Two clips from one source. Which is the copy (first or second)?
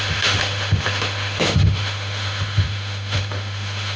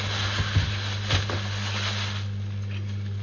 first